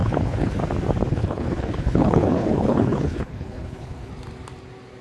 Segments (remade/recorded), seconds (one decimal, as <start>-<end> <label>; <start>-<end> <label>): 0.0-0.6 remade; 0.6-1.1 recorded; 1.1-4.1 remade; 4.1-5.0 recorded